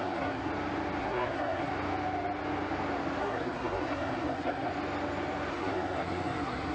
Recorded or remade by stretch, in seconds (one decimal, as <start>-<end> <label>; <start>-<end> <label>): 0.0-0.5 remade; 0.5-1.0 recorded; 1.0-1.7 remade; 1.7-3.2 recorded; 3.2-4.7 remade; 4.7-5.5 recorded; 5.5-6.7 remade